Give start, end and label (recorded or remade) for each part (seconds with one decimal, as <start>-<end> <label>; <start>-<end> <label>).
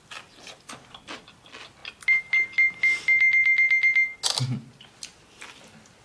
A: 0.0-6.0 recorded